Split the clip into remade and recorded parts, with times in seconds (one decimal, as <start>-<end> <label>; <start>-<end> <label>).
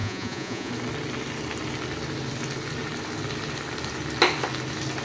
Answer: 0.0-0.7 remade; 0.7-5.0 recorded